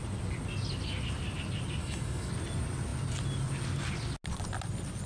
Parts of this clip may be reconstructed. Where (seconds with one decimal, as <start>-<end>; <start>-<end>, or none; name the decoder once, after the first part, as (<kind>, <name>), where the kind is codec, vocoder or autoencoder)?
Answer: 1.8-2.3 (autoencoder, DAC-VAE)